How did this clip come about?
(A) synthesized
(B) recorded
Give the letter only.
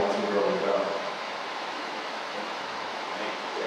A